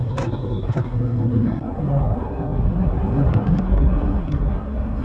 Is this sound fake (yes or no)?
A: yes